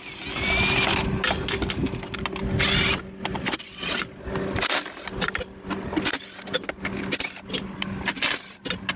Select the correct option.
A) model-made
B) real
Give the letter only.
B